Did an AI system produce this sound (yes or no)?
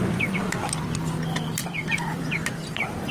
no